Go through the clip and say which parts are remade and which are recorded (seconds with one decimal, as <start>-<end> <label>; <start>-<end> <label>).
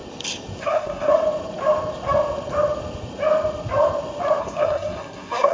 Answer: 0.0-0.6 recorded; 0.6-1.1 remade; 1.1-4.4 recorded; 4.4-5.5 remade